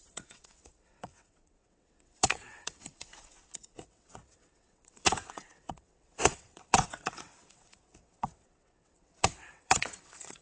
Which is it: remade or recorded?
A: remade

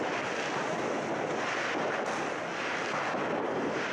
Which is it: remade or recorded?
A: recorded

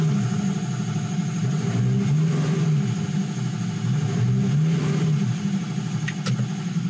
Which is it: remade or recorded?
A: recorded